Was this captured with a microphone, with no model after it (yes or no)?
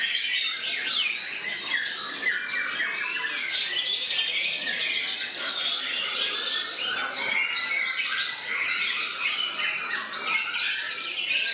yes